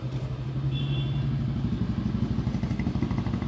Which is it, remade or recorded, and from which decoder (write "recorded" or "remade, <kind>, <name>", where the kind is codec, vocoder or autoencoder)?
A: recorded